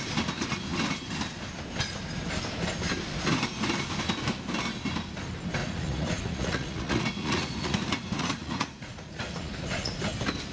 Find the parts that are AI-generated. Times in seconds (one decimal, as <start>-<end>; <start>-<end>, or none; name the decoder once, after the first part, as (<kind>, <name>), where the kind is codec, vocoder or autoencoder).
5.6-10.0 (vocoder, Vocos)